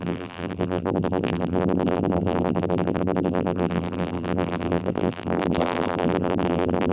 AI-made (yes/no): yes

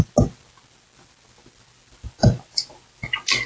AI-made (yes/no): no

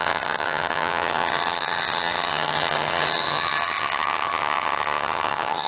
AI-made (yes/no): yes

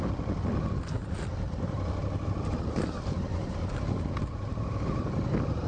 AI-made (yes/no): no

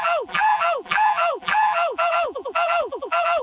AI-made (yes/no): yes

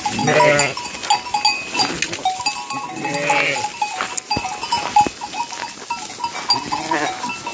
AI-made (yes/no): no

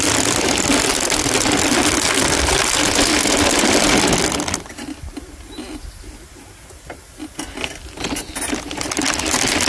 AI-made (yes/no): no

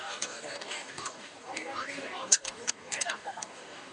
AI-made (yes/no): yes